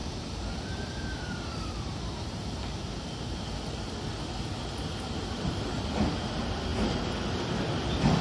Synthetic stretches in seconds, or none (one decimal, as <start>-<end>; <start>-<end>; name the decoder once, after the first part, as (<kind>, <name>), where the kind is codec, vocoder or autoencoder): 0.0-3.9 (vocoder, BigVGAN v2)